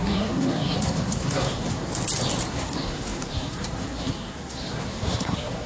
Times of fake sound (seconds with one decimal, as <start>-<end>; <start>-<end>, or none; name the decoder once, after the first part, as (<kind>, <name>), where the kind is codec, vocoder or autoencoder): 0.0-1.9 (codec, SNAC); 2.5-5.7